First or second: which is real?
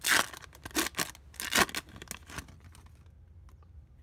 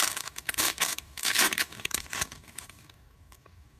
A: first